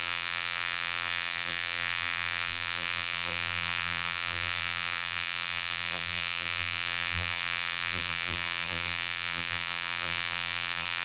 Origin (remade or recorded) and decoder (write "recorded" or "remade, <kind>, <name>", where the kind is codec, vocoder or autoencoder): remade, vocoder, BigVGAN v2